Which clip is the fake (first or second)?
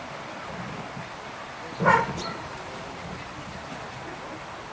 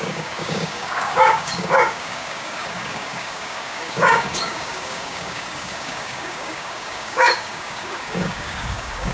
second